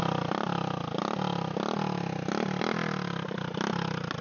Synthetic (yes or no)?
no